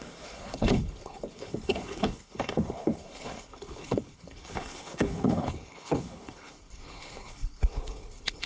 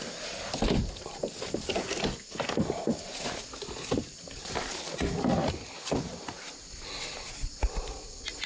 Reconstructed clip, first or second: first